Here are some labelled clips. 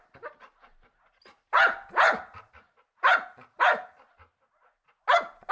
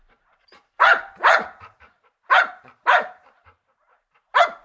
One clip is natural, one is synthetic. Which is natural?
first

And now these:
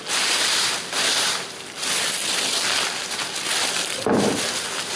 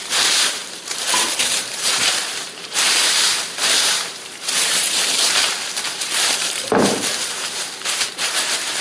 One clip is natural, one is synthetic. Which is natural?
first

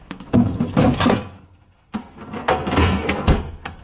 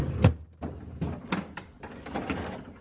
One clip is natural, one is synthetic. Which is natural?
second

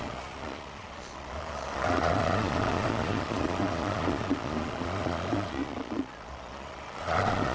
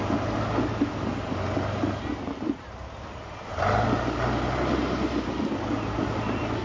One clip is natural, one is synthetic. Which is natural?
second